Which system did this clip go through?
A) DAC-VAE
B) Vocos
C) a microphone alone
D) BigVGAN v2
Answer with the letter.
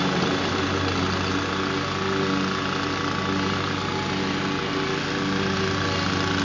C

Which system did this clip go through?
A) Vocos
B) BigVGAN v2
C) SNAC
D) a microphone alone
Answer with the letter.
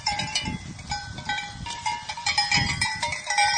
B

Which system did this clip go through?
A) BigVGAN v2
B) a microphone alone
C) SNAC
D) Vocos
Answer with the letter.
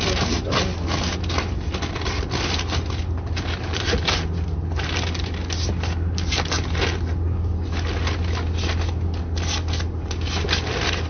B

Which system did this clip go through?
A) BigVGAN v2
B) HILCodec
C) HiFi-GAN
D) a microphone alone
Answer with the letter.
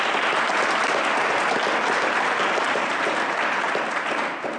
D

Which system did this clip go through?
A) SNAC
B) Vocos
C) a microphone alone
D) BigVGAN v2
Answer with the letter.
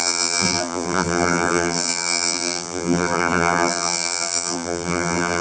D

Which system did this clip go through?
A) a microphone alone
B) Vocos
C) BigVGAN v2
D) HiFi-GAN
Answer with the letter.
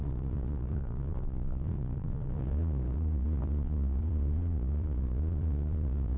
B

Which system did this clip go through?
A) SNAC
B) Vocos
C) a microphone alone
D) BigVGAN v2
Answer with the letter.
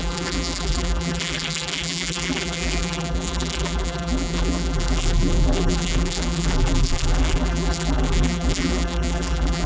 D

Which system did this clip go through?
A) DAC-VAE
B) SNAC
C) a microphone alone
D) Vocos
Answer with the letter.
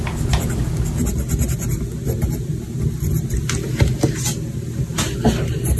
C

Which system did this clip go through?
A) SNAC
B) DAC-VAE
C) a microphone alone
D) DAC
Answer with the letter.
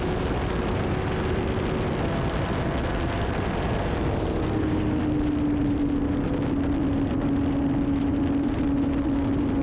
C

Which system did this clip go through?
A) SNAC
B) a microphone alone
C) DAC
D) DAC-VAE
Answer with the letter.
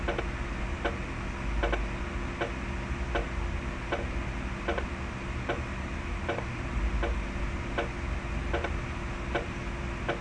B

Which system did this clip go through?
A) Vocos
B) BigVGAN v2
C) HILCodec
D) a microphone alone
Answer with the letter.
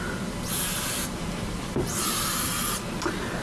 B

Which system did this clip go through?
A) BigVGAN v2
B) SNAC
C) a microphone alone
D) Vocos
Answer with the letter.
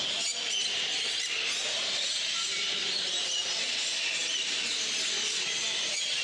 C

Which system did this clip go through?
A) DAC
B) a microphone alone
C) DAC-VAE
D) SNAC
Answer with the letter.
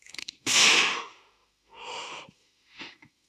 C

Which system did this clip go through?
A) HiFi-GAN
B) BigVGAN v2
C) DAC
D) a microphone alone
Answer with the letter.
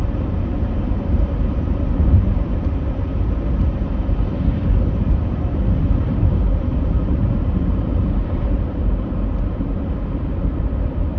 B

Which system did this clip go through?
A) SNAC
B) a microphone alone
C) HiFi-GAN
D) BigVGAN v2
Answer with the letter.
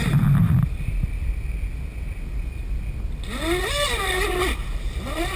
B